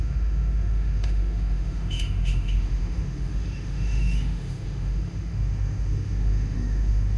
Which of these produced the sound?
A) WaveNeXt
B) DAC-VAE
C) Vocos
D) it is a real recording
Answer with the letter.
B